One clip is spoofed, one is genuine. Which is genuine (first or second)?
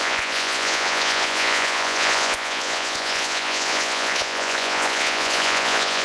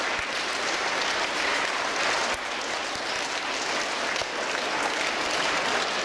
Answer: second